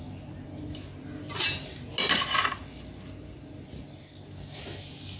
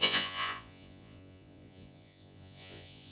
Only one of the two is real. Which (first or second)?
first